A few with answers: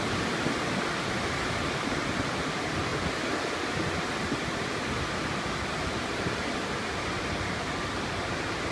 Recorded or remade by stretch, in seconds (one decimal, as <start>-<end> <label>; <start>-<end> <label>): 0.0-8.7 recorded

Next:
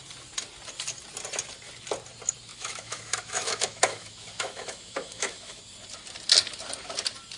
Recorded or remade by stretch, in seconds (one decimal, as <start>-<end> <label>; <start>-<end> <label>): 0.0-2.5 recorded; 2.5-5.6 remade; 5.6-7.4 recorded

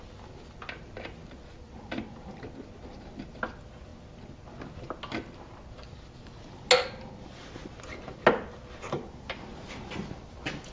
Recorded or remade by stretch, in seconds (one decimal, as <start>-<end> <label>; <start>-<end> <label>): 0.0-10.7 recorded